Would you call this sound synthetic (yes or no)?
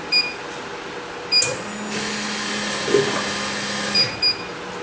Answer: no